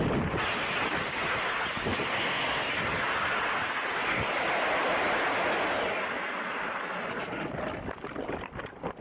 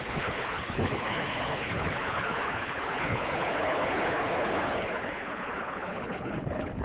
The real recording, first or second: first